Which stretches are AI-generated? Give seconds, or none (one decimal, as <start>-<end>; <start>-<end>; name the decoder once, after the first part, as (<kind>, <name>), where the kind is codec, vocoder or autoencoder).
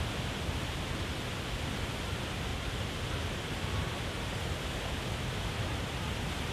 none